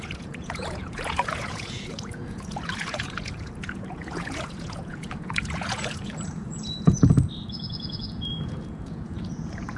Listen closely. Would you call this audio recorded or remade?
remade